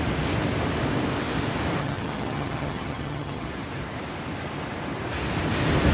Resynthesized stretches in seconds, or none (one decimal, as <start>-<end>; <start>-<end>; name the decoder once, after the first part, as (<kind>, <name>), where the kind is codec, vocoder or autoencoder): 1.8-3.5 (vocoder, HiFi-GAN)